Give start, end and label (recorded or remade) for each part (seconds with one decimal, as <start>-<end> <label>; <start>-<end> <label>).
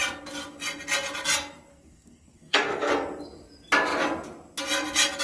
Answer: 0.0-1.7 recorded; 1.7-2.9 remade; 2.9-5.2 recorded